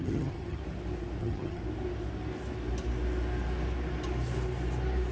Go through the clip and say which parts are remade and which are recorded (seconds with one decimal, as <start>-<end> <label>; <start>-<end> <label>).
0.0-0.6 remade; 0.6-1.2 recorded; 1.2-1.6 remade; 1.6-5.1 recorded